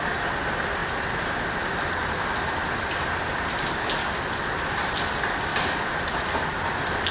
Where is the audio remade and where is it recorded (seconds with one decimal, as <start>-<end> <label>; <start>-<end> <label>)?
0.0-7.1 recorded